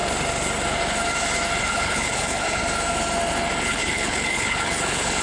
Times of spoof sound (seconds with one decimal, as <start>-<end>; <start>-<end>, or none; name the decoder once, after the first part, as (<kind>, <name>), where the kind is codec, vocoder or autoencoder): 1.6-2.6 (codec, HILCodec); 3.6-5.2